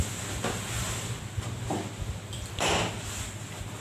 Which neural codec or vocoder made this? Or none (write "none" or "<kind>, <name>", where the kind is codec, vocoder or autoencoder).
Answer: none